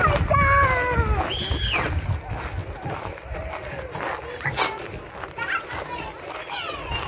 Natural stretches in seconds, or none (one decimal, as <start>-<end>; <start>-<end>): 0.0-2.6; 3.7-7.1